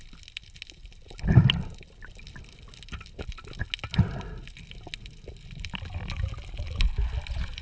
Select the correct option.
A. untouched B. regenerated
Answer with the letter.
A